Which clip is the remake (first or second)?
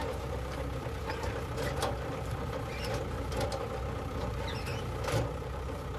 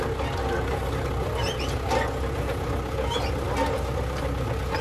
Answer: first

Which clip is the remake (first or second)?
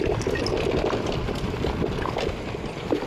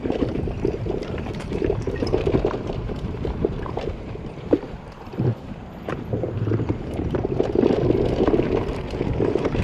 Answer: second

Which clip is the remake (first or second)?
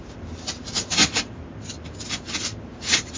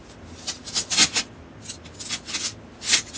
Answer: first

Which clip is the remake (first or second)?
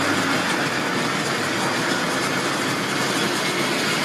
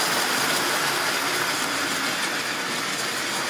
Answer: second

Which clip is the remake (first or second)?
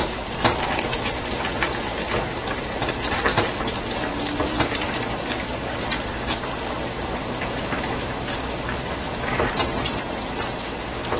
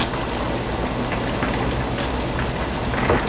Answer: first